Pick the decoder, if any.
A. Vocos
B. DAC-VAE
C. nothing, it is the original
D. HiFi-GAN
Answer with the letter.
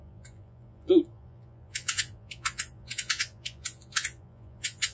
A